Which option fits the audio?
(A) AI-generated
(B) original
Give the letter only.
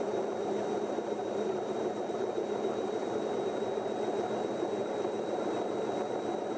A